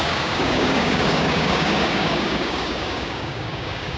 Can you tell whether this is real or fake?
fake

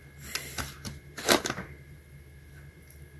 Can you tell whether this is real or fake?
real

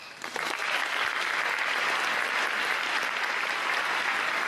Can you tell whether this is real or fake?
real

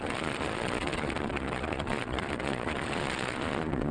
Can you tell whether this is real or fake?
fake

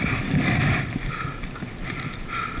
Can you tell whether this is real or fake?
real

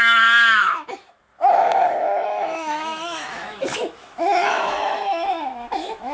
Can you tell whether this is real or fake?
fake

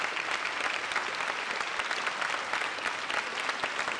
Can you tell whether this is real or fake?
real